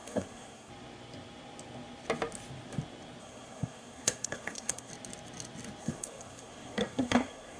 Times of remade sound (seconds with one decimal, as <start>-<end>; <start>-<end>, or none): 0.0-0.7; 3.2-4.9; 5.8-7.6